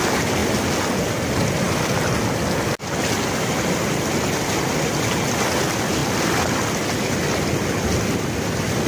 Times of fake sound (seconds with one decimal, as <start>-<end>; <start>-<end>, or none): none